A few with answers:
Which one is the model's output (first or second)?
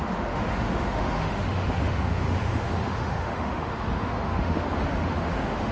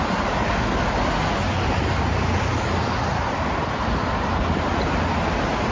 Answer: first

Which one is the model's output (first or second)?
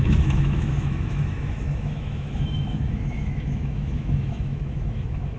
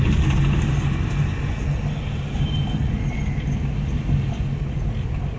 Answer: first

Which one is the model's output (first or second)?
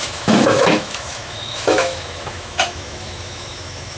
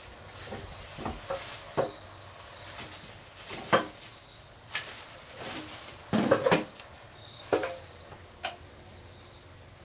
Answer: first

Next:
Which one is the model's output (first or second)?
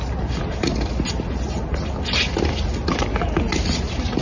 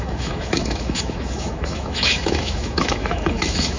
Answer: second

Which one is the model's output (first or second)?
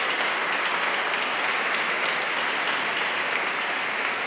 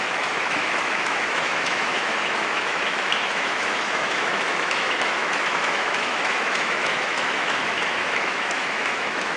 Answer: second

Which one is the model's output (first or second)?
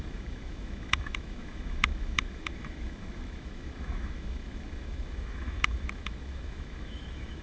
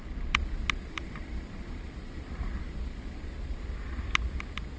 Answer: first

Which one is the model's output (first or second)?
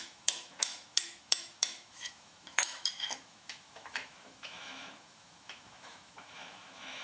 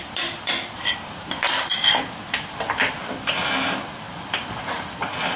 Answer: first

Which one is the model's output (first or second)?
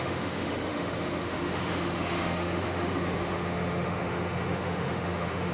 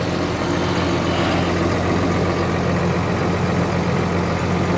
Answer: first